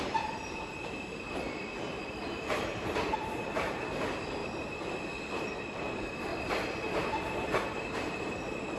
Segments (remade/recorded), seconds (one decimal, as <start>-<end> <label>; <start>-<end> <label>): 0.0-4.4 remade; 4.4-5.2 recorded; 5.2-6.3 remade; 6.3-7.6 recorded; 7.6-8.8 remade